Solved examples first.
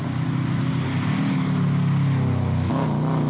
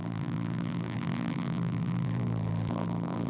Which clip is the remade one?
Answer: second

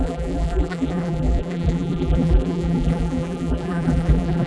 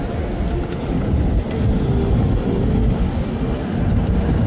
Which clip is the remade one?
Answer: first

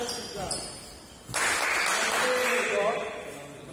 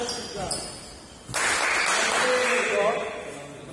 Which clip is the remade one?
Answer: first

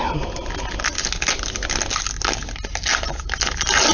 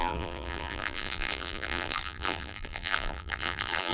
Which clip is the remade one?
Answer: second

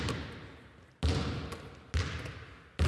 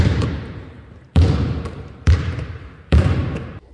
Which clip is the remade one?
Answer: second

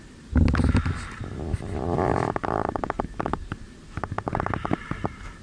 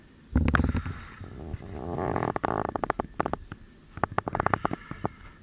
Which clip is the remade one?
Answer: first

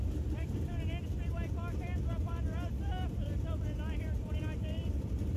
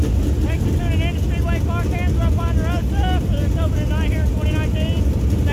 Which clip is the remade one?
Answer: first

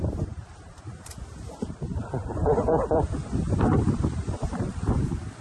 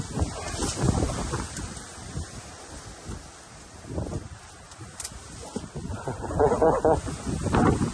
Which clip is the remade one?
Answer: first